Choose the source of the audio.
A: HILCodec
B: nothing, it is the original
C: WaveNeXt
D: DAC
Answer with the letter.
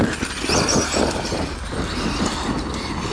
B